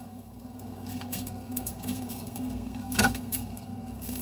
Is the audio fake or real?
fake